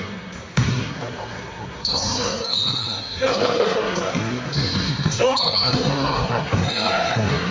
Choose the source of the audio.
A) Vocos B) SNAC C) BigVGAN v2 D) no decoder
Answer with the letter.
B